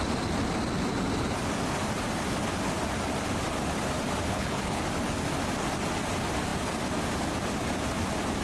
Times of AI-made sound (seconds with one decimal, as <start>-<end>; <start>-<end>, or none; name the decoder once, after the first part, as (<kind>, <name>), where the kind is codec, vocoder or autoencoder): 4.3-4.8 (codec, HILCodec)